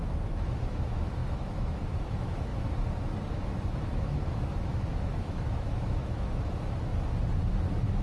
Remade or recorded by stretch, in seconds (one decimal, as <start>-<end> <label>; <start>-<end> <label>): 0.0-2.5 remade; 2.5-3.3 recorded; 3.3-6.9 remade; 6.9-7.5 recorded; 7.5-8.0 remade